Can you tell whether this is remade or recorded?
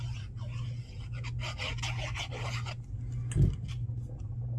recorded